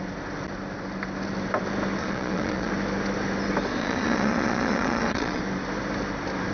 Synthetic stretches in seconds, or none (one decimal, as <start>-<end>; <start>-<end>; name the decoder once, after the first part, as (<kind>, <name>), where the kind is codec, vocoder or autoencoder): 2.0-2.7 (vocoder, Vocos); 3.8-5.4

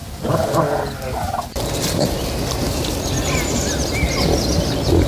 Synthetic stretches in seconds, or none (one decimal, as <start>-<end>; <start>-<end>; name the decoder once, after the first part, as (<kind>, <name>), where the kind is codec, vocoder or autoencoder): none